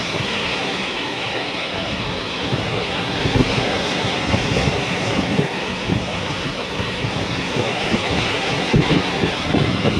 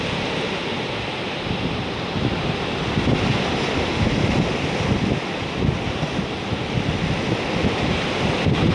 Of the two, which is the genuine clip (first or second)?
second